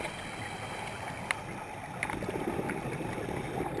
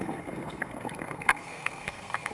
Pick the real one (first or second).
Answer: first